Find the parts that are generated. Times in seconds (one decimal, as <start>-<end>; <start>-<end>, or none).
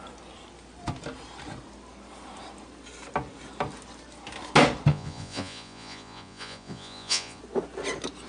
4.9-7.4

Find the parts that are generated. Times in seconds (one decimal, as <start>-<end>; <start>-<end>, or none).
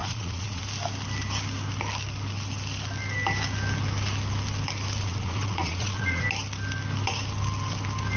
0.0-0.6; 5.0-6.2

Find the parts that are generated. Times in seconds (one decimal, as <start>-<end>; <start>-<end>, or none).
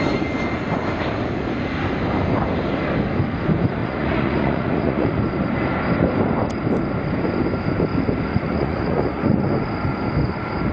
3.8-5.2; 8.3-9.5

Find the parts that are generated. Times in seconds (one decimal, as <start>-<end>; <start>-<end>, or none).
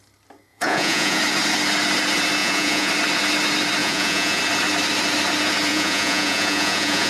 0.5-1.2; 2.4-2.9; 3.8-4.4; 5.7-7.1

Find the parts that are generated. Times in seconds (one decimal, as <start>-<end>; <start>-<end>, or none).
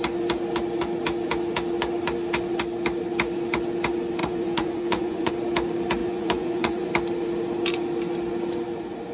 4.2-5.3; 6.0-6.9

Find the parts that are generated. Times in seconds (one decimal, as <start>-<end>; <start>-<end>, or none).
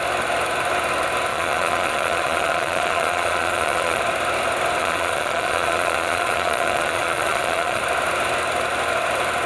1.3-4.0; 4.8-7.8